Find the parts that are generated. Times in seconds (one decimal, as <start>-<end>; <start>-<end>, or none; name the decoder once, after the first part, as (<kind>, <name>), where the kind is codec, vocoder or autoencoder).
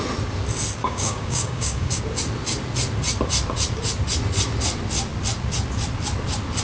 0.8-2.0 (codec, DAC)